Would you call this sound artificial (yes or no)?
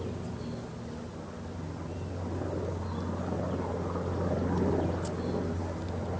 no